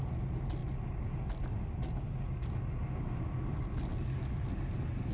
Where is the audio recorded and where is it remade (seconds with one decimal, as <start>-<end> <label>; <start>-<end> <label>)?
0.0-5.1 recorded